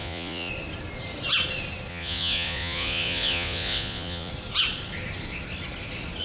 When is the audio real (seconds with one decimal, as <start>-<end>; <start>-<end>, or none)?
0.5-1.9; 4.3-6.2